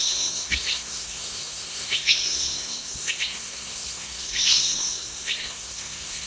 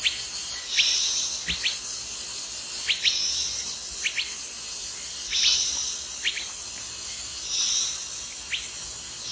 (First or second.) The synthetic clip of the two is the first